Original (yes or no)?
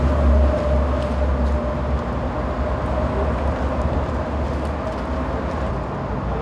yes